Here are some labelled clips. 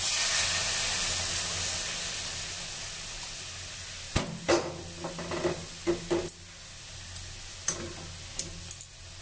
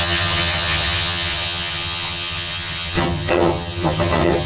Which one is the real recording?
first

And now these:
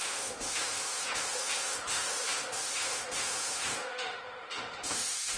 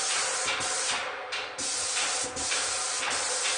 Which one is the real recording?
second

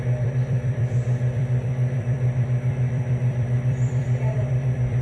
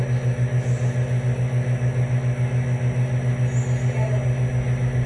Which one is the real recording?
second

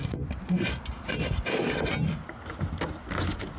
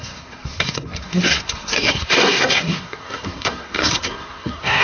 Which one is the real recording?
first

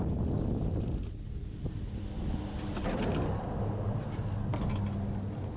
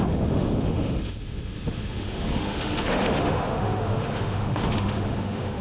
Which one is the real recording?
first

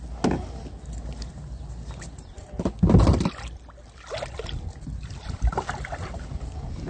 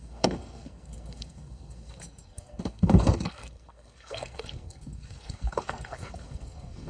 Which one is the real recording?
first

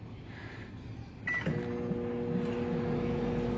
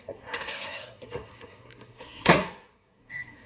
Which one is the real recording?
first